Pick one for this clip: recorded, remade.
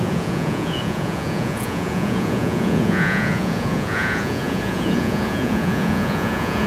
remade